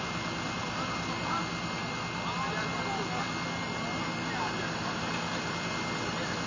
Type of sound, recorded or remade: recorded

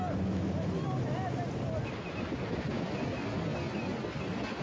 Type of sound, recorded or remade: recorded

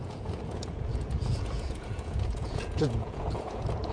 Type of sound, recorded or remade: remade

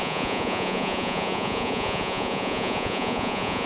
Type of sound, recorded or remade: remade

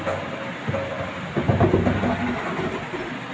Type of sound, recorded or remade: recorded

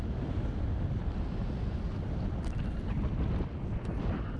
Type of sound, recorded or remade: recorded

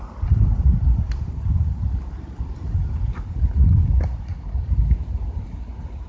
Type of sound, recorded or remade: recorded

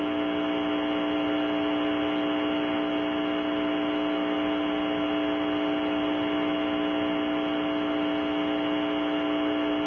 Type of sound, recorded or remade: recorded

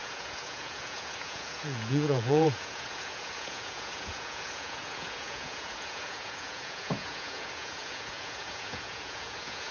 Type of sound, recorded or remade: remade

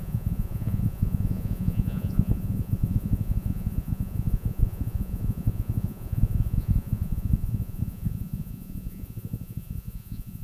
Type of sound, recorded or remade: remade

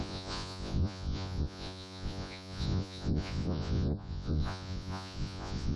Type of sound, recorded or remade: remade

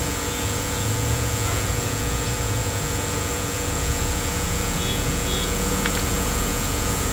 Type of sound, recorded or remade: remade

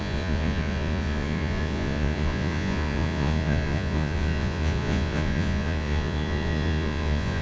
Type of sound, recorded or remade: remade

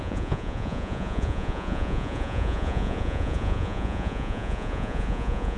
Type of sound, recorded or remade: remade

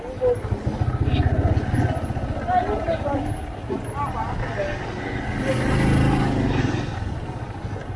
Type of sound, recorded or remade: recorded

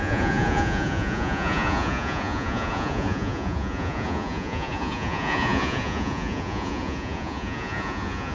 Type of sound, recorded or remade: remade